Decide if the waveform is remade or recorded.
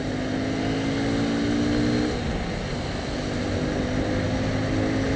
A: recorded